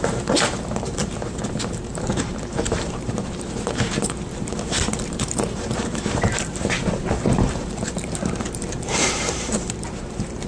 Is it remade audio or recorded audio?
remade